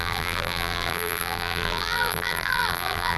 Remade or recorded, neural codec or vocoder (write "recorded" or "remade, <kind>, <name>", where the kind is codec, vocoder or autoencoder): remade, vocoder, BigVGAN v2